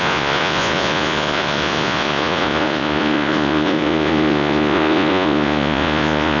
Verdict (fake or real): fake